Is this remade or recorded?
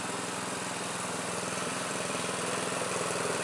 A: remade